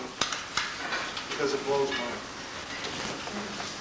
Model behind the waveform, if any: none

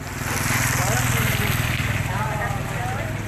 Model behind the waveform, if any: none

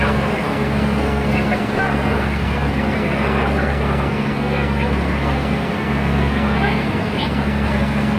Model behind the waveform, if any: codec, SNAC